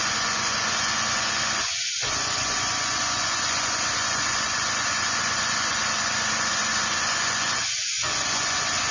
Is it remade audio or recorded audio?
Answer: remade